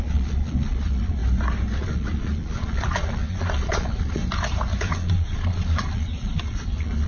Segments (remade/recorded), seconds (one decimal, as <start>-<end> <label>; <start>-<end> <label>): 0.0-1.2 remade; 1.2-1.8 recorded; 1.8-4.2 remade; 4.2-4.8 recorded; 4.8-7.1 remade